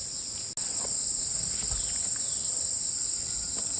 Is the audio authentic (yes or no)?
yes